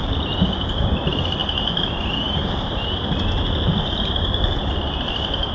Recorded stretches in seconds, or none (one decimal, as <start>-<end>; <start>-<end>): 0.0-5.5